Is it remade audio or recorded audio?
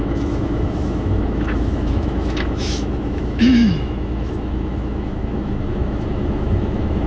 remade